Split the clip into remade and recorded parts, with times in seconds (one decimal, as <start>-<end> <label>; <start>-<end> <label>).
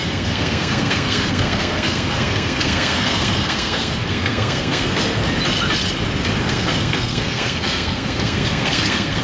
0.0-5.2 remade; 5.2-6.4 recorded; 6.4-9.2 remade